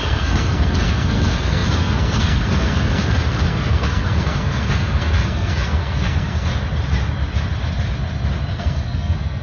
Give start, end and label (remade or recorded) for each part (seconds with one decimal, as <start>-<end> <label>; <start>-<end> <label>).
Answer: 0.0-6.5 remade; 6.5-8.5 recorded; 8.5-9.4 remade